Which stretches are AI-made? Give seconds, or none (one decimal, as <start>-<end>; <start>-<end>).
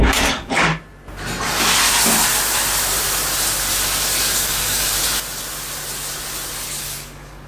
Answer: 0.0-0.7; 4.4-4.9; 6.8-7.5